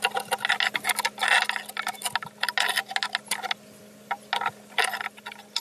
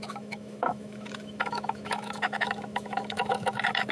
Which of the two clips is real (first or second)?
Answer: first